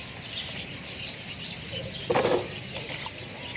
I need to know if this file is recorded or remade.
remade